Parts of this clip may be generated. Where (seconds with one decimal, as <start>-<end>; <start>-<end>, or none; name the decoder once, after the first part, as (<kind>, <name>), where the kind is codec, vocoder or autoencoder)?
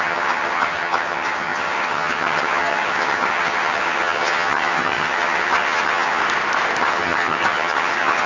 0.0-6.2 (vocoder, HiFi-GAN); 6.8-8.3